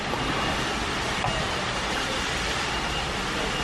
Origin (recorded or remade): recorded